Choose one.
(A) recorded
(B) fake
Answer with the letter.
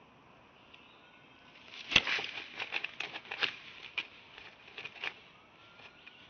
A